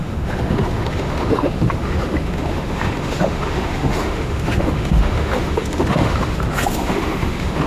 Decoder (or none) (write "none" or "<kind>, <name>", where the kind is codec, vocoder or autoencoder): autoencoder, DAC-VAE